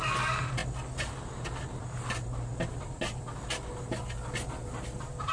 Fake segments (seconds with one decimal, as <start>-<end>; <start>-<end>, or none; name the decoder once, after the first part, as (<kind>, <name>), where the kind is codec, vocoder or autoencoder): none